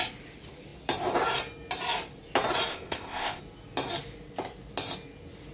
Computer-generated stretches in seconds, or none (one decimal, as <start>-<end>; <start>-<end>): 2.7-3.4